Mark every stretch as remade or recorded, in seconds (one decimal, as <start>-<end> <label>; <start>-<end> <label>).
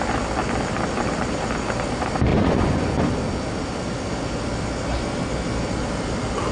0.0-2.3 recorded; 2.3-3.0 remade; 3.0-6.5 recorded